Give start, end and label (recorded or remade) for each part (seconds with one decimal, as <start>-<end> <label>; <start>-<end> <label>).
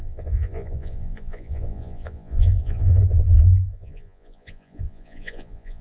0.0-5.8 remade